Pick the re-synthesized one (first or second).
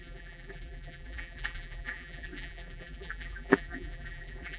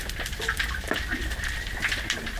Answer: first